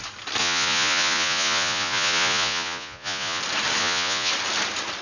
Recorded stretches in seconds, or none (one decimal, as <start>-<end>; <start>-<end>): 0.0-0.4; 3.4-3.8; 4.3-5.0